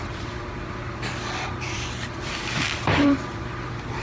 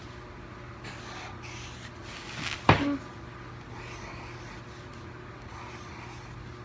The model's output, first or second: first